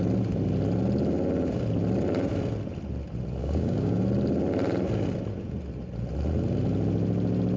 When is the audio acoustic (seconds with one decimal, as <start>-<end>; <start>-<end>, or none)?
0.0-3.4; 4.0-7.6